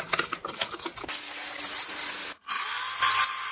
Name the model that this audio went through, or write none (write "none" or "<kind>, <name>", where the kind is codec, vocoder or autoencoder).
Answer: none